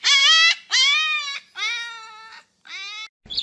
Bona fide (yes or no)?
yes